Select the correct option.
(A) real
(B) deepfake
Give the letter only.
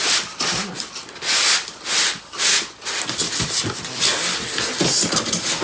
A